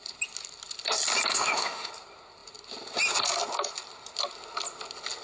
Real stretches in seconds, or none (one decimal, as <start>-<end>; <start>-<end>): 0.0-1.3; 1.9-5.2